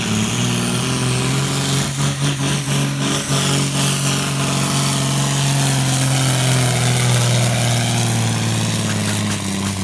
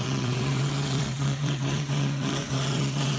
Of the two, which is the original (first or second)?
first